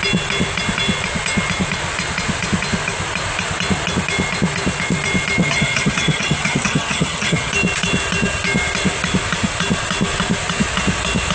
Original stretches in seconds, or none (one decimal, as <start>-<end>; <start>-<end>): 0.0-5.4; 7.5-11.3